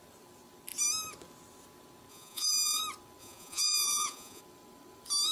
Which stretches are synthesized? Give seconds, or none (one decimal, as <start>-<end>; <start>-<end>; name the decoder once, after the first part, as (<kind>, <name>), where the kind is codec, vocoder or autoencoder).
2.1-2.8 (vocoder, Vocos); 3.2-4.4